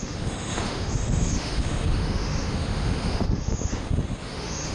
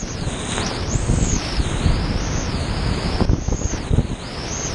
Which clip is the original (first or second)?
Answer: second